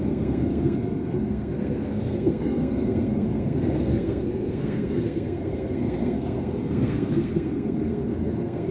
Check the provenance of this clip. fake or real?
fake